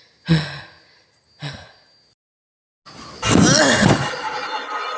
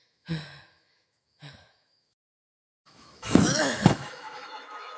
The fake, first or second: second